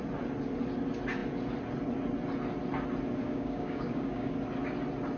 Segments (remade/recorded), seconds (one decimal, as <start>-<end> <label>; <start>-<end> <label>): 0.0-3.2 recorded; 3.2-4.3 remade; 4.3-5.2 recorded